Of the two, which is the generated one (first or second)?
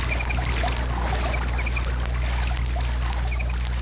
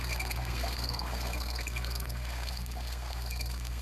second